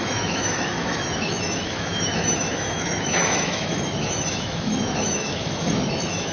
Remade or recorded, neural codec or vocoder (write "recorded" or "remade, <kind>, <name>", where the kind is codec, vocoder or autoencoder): remade, autoencoder, DAC-VAE